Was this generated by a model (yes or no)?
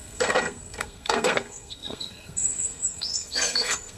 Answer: yes